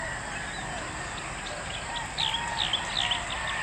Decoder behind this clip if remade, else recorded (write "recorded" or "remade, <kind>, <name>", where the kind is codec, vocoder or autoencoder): recorded